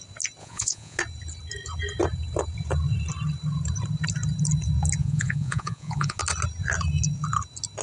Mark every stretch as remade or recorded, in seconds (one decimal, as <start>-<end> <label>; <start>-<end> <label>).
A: 0.0-0.4 recorded; 0.4-1.0 remade; 1.0-5.0 recorded; 5.0-6.2 remade; 6.2-7.8 recorded